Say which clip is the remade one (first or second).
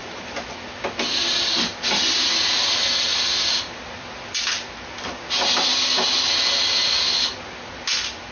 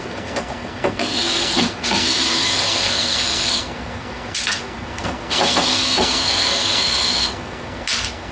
second